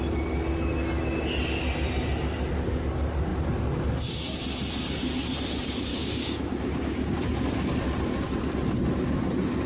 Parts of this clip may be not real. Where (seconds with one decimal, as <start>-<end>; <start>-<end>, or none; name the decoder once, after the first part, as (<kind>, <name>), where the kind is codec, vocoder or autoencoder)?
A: 5.9-7.2 (codec, DAC)